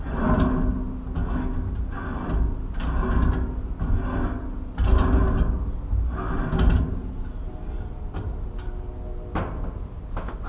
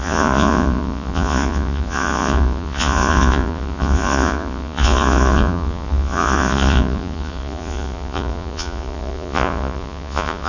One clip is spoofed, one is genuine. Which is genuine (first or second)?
first